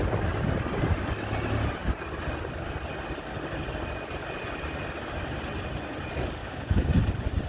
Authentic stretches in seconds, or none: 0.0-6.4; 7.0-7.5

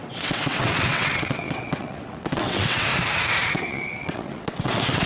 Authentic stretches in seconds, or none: 2.9-3.6

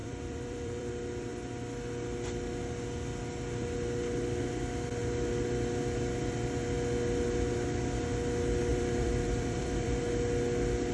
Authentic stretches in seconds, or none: 0.9-8.7; 10.0-10.9

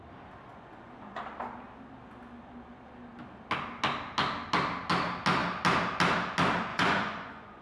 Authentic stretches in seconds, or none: 0.0-0.5; 1.2-6.7

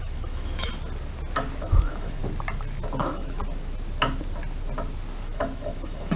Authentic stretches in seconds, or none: 0.7-1.6; 2.2-3.0; 3.4-5.2

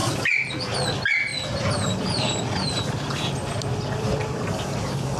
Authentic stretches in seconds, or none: 0.6-1.3; 4.4-5.2

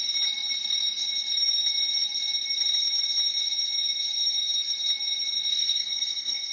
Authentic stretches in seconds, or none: 0.0-5.5